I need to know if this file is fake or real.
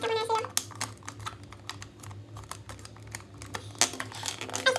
real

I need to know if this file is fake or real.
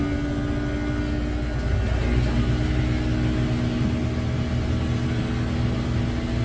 real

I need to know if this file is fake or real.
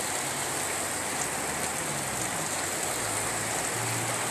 real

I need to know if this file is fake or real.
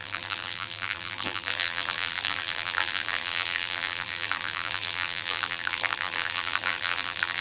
fake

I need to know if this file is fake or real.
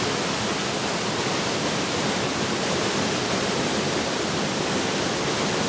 real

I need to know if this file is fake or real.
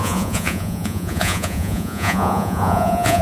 fake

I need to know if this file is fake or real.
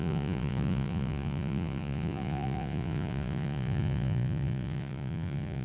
fake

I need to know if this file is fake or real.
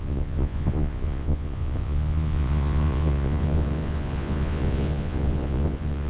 fake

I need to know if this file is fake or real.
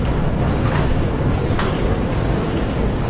fake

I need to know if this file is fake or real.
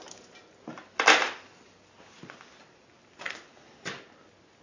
real